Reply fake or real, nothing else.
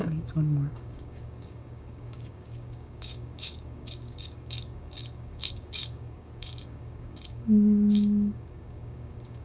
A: fake